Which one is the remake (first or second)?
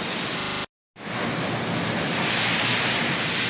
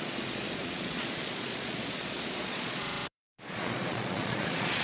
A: second